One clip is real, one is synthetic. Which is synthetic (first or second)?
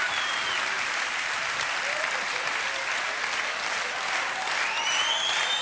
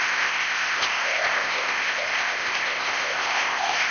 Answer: second